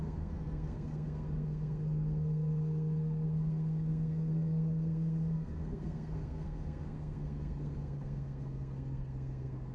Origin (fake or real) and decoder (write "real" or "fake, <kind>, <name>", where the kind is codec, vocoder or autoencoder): fake, codec, SNAC